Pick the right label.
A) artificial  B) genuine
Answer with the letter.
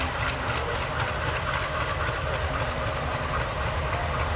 B